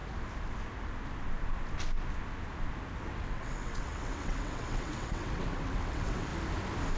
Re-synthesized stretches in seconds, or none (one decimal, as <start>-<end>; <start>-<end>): 3.0-6.3